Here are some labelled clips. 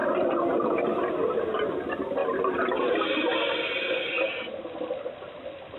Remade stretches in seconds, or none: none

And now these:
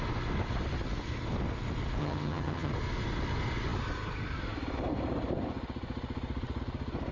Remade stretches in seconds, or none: 2.0-2.7 (vocoder, HiFi-GAN)

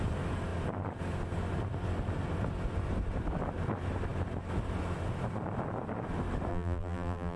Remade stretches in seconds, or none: 6.5-7.4 (vocoder, BigVGAN v2)

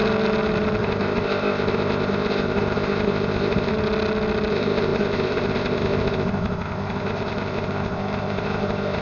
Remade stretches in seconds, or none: 0.8-3.7 (codec, ZipCodec); 4.5-9.0

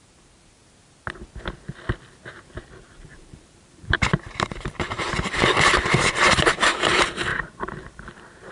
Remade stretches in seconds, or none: 0.0-0.6 (vocoder, BigVGAN v2); 2.8-8.5

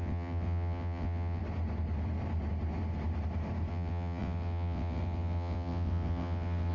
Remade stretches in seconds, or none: 0.0-1.4 (vocoder, WaveNeXt); 3.7-6.7